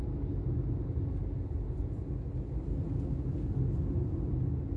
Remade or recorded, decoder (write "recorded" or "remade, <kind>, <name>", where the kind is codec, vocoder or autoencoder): recorded